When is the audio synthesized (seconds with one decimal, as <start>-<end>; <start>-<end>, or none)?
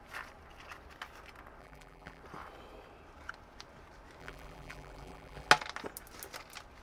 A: 1.6-2.2; 4.2-5.5